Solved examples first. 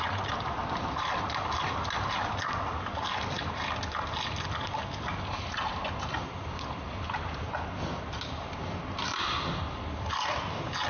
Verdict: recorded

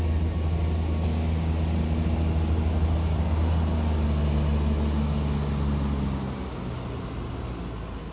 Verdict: recorded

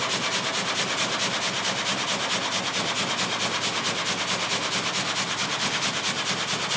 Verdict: recorded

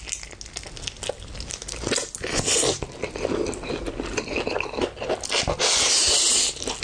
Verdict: recorded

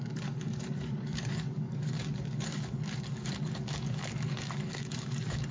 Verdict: remade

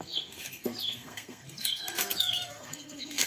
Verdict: remade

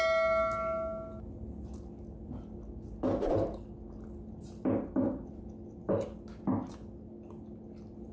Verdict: recorded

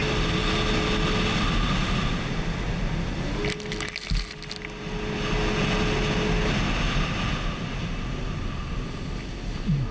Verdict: recorded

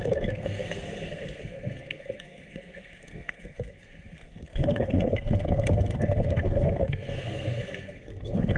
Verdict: remade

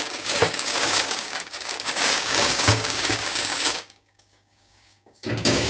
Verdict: remade